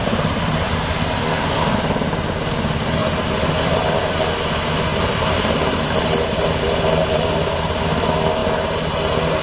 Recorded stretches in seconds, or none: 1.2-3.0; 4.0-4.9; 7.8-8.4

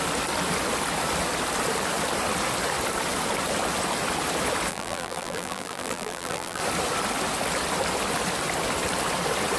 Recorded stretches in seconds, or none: 0.0-4.7; 6.6-9.6

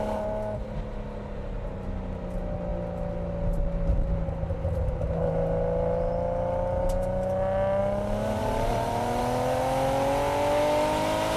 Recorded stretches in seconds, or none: 0.0-8.4; 9.2-11.4

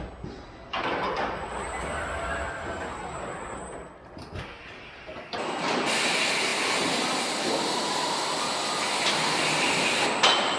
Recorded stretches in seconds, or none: 0.0-10.6